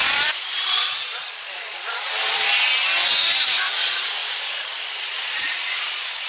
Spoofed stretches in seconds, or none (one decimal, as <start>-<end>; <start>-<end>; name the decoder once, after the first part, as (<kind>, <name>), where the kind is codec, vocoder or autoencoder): 0.0-2.7 (vocoder, Vocos); 3.8-6.3